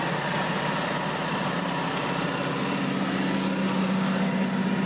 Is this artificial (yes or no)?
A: no